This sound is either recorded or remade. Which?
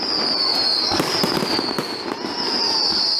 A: recorded